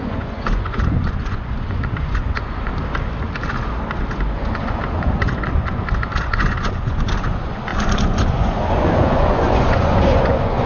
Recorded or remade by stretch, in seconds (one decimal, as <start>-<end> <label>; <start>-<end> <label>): 0.0-2.7 remade; 2.7-4.1 recorded; 4.1-10.7 remade